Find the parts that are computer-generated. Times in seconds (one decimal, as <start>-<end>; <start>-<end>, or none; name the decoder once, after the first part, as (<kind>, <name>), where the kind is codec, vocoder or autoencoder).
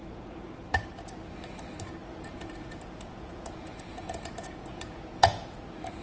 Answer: 0.0-0.5 (vocoder, Vocos); 2.0-5.6